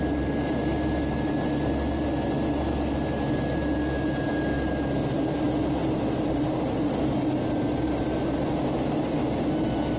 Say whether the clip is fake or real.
real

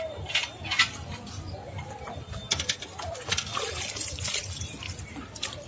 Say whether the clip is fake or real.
real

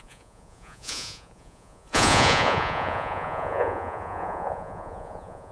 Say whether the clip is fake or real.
fake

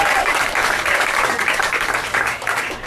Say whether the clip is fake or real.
fake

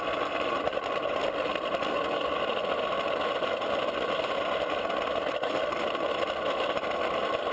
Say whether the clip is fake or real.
real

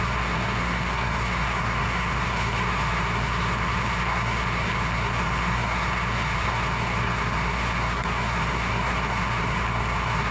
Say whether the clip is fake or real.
fake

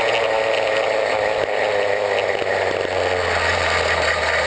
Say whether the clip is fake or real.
real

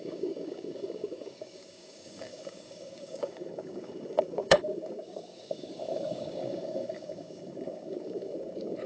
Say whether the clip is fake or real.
fake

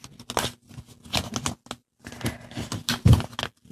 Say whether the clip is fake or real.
real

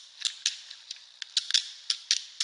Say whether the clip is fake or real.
real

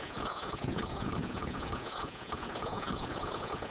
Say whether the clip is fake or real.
fake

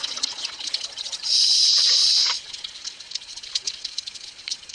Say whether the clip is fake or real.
fake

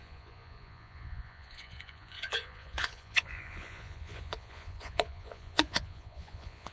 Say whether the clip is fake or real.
fake